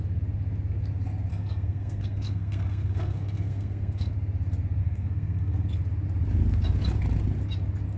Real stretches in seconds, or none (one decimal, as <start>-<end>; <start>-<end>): 0.0-1.3; 4.1-4.8; 5.7-8.0